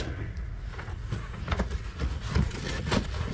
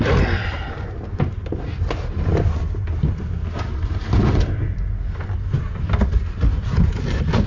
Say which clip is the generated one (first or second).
first